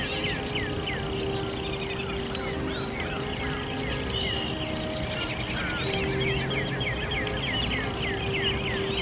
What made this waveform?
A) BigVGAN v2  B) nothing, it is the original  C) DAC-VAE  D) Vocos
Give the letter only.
B